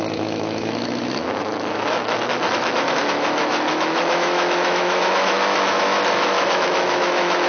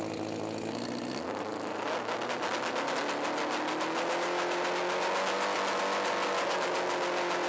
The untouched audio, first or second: second